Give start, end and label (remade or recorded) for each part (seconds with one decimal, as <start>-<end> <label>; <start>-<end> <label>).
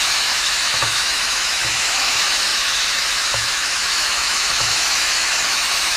0.0-6.0 remade